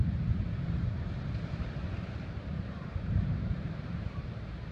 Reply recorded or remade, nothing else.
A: remade